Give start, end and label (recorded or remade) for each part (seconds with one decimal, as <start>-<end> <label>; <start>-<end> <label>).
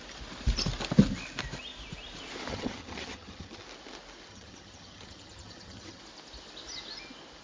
0.0-2.5 recorded; 2.5-3.6 remade; 3.6-4.3 recorded; 4.3-6.0 remade; 6.0-7.4 recorded